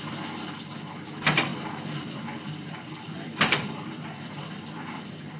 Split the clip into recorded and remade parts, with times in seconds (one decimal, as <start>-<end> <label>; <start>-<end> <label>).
0.0-1.5 recorded; 1.5-4.7 remade; 4.7-5.4 recorded